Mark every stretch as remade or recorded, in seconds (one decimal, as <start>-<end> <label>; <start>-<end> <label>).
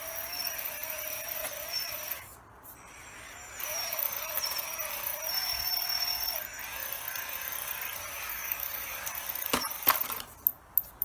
0.0-8.3 recorded; 8.3-8.9 remade; 8.9-11.0 recorded